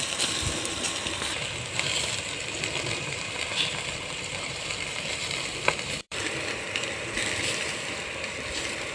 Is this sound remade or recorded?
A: remade